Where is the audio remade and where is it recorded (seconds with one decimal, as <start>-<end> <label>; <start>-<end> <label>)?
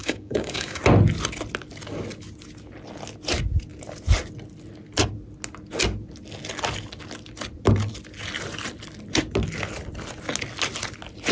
0.0-0.8 remade; 0.8-11.3 recorded